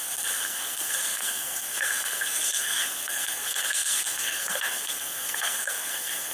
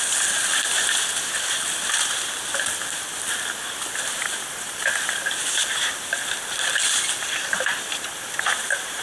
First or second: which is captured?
second